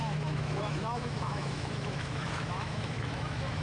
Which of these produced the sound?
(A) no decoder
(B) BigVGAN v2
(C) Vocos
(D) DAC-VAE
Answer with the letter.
D